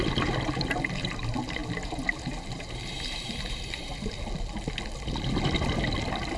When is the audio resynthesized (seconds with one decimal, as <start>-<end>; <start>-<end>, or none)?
1.6-4.1